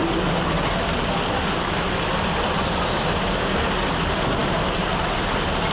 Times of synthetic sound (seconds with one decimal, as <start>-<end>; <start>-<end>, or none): none